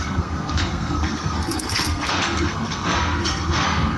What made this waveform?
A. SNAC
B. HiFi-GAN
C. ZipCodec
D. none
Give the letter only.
A